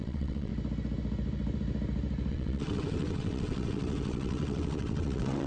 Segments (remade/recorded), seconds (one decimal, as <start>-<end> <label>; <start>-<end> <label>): 0.0-0.5 remade; 0.5-2.3 recorded; 2.3-5.5 remade